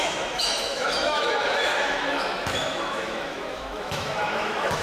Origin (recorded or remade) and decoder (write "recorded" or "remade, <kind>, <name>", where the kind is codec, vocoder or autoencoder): remade, autoencoder, DAC-VAE